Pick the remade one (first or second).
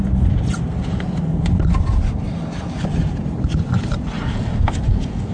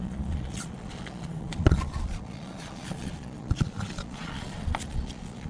second